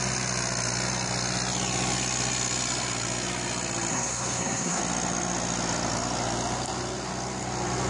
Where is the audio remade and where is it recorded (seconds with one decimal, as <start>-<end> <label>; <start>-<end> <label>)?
0.0-3.9 recorded; 3.9-4.8 remade; 4.8-7.9 recorded